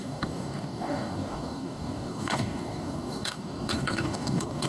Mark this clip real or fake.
fake